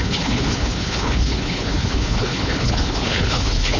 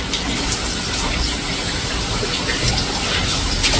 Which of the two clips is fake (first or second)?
first